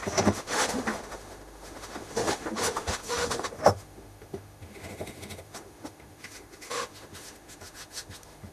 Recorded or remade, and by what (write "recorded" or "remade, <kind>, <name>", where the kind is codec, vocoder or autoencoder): remade, autoencoder, DAC-VAE